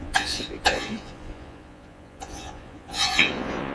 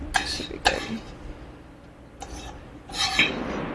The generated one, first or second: first